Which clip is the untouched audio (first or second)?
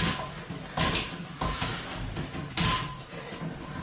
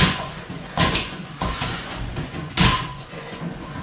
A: first